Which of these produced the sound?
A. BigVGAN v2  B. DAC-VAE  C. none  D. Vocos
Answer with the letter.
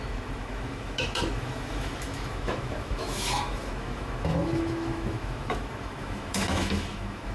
B